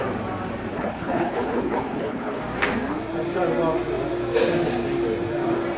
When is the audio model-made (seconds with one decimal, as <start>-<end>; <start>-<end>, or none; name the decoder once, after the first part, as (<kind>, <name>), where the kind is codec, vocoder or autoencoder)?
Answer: 0.7-2.4 (codec, HILCodec)